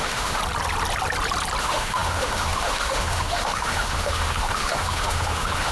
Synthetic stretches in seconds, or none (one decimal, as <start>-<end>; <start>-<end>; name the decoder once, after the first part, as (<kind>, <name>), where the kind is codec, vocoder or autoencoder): 0.0-0.4 (autoencoder, DAC-VAE); 1.6-5.7